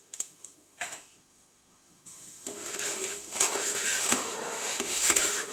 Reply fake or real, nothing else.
fake